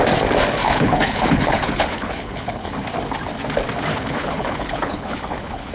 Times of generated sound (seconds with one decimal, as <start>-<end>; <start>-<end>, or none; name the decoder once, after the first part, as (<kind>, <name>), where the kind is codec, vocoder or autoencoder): 0.6-2.7 (codec, HILCodec); 3.9-5.7